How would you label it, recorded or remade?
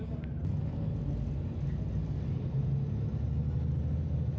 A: recorded